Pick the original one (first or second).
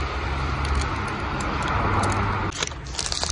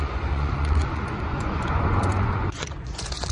first